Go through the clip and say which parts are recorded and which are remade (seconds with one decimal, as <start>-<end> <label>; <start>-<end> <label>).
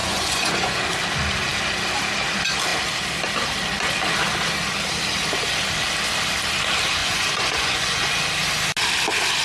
0.0-0.9 remade; 0.9-7.0 recorded; 7.0-8.2 remade; 8.2-9.4 recorded